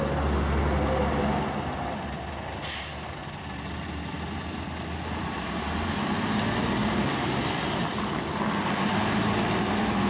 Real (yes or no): yes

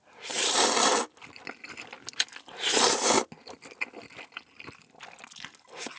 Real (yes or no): yes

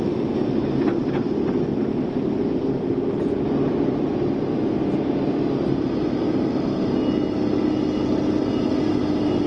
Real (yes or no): yes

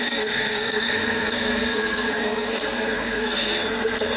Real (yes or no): no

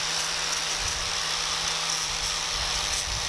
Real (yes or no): yes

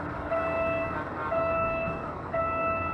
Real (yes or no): no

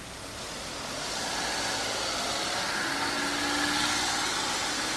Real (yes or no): yes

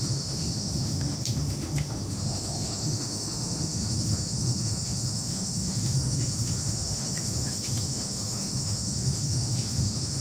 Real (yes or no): no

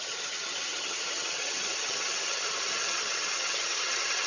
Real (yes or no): no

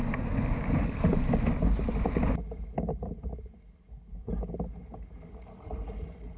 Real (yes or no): yes